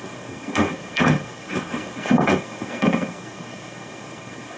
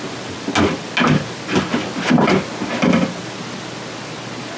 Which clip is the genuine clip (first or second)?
second